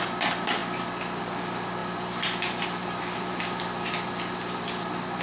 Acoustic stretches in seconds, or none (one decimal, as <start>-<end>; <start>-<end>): 0.0-1.8; 4.8-5.2